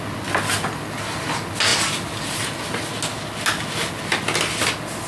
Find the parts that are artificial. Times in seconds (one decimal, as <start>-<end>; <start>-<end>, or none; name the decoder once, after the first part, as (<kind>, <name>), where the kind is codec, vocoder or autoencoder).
none

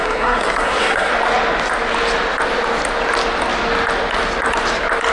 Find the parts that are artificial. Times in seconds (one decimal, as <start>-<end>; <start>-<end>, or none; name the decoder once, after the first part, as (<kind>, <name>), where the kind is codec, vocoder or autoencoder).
0.0-1.1 (codec, SNAC)

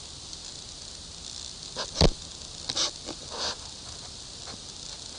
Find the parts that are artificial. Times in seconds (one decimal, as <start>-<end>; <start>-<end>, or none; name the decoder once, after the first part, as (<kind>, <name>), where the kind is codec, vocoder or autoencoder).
none

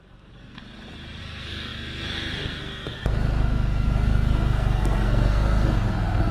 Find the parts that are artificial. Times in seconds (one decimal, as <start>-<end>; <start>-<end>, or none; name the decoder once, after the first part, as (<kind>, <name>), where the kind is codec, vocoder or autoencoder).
0.0-0.6 (codec, SNAC); 1.2-6.3